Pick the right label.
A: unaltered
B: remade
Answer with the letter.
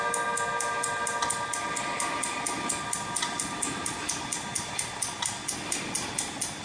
A